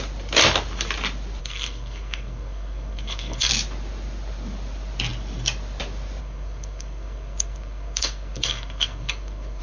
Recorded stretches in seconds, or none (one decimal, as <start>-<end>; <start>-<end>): 0.0-1.4; 3.5-6.2